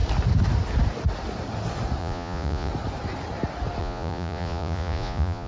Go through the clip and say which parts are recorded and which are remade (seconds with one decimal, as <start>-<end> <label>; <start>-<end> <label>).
0.0-2.0 recorded; 2.0-2.7 remade; 2.7-3.8 recorded; 3.8-5.5 remade